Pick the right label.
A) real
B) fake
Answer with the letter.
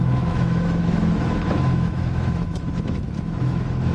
B